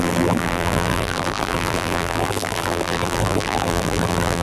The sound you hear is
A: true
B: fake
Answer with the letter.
B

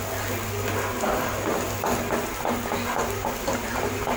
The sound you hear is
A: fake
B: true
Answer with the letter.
B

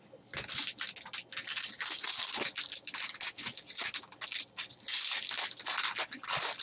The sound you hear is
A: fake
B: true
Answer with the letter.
B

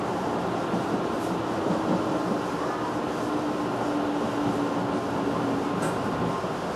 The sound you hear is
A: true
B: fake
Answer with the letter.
A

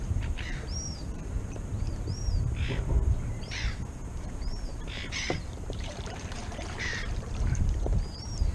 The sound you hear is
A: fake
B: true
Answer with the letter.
A